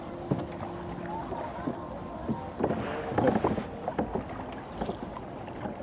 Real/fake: real